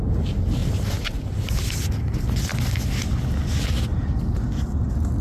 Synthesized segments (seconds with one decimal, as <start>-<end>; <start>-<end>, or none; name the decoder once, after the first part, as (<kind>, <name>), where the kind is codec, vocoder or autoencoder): 0.6-1.6 (vocoder, BigVGAN v2)